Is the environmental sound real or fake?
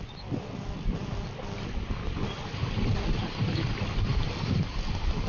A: real